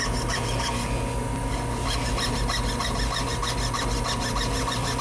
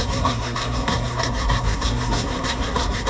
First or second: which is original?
first